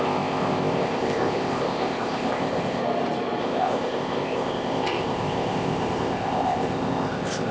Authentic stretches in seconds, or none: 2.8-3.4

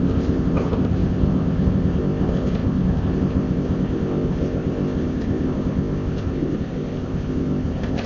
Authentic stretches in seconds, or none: none

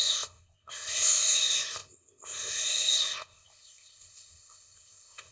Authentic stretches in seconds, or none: none